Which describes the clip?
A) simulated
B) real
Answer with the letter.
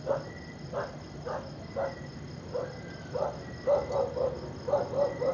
B